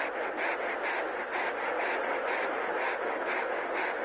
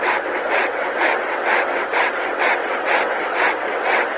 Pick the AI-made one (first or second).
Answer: second